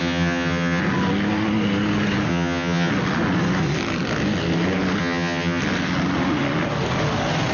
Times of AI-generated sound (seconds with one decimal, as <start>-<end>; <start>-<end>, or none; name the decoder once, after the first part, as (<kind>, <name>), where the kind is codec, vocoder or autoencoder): 0.0-0.8 (vocoder, HiFi-GAN); 2.3-2.9; 5.0-5.6